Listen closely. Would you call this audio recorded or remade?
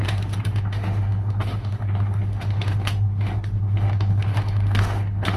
remade